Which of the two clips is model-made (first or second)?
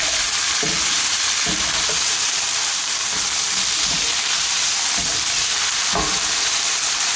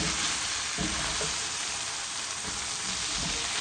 first